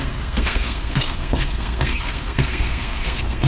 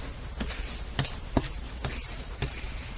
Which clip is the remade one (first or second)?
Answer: first